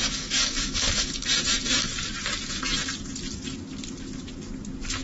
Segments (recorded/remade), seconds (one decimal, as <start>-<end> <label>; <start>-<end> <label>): 0.0-1.9 remade; 1.9-5.0 recorded